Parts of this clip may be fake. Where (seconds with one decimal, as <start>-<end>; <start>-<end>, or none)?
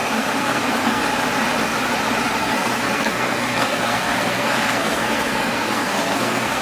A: 0.0-1.0; 2.4-6.6